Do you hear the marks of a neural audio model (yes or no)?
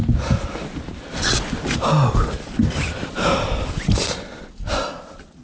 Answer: no